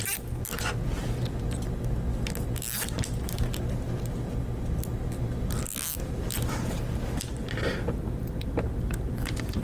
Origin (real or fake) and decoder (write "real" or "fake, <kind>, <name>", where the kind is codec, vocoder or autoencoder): real